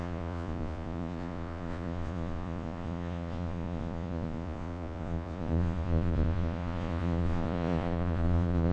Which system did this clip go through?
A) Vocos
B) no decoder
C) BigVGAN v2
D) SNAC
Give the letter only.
A